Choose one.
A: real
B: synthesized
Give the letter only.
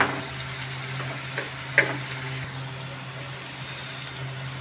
A